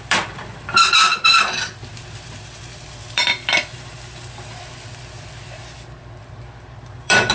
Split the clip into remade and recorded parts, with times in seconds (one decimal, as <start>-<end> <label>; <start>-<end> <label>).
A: 0.0-7.3 remade